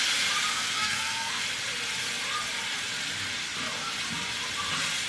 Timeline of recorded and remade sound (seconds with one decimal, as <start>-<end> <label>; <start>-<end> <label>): 0.0-0.5 recorded; 0.5-1.4 remade; 1.4-5.1 recorded